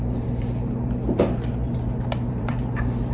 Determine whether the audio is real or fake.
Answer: fake